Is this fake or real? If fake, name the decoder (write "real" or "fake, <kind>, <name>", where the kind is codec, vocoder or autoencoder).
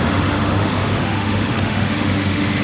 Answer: fake, autoencoder, DAC-VAE